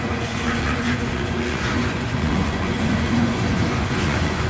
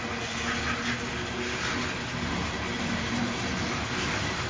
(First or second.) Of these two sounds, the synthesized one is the first